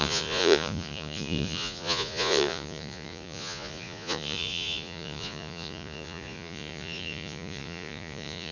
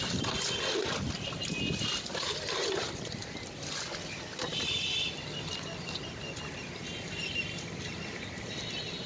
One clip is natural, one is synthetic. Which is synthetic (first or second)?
first